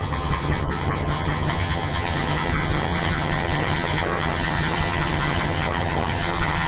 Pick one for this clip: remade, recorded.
remade